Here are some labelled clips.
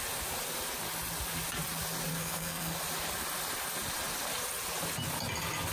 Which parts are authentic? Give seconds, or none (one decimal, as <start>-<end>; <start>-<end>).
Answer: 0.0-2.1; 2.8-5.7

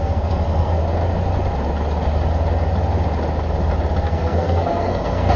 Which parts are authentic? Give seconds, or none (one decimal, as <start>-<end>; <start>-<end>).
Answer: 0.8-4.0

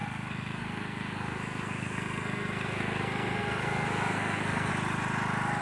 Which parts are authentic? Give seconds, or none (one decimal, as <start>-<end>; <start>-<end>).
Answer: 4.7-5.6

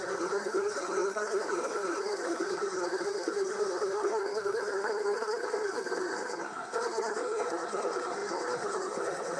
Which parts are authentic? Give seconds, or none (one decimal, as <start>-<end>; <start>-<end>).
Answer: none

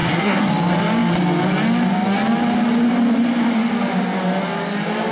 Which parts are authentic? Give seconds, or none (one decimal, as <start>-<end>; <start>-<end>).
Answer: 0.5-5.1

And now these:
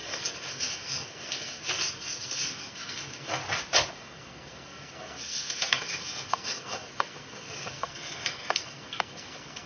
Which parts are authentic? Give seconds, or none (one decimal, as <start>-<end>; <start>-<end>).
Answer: 3.4-3.9